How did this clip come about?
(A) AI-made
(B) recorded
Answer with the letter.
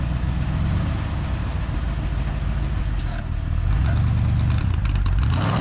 B